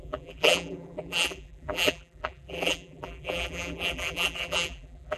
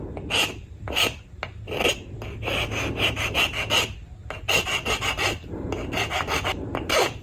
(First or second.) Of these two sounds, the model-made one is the first